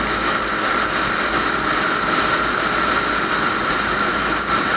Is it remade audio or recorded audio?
recorded